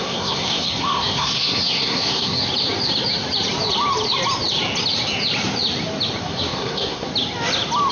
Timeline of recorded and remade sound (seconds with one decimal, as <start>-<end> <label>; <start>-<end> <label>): 0.0-2.4 remade; 2.4-6.2 recorded; 6.2-7.1 remade; 7.1-7.9 recorded